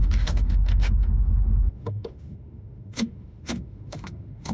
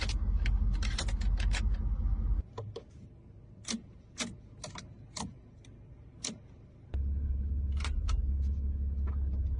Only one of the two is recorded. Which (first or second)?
second